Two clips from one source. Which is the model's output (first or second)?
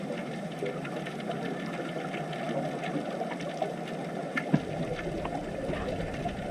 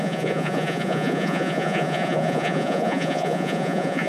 second